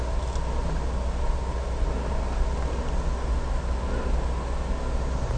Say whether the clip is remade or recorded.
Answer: recorded